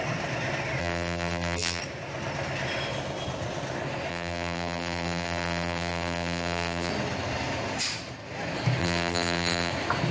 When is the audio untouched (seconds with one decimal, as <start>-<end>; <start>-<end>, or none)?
0.0-0.8; 1.8-4.1; 6.9-8.8; 9.7-10.1